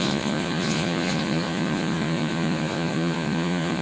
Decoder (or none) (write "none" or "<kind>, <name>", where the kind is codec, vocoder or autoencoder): vocoder, Vocos